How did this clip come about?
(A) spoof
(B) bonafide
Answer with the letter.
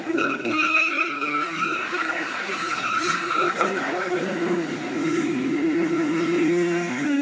A